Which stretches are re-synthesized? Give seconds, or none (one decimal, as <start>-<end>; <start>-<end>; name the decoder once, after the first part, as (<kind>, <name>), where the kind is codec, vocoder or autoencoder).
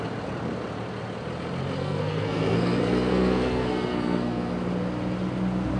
1.8-4.5 (codec, SNAC)